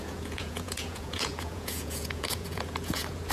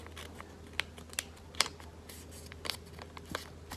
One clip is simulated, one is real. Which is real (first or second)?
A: second